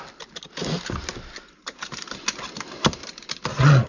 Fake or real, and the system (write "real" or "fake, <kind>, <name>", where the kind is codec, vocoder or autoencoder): real